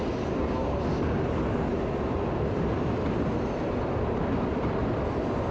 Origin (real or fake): real